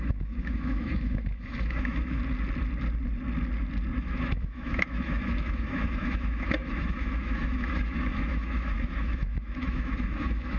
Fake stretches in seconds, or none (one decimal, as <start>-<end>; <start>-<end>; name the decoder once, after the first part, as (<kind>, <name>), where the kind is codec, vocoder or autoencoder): 0.0-2.2 (autoencoder, DAC-VAE); 4.0-10.6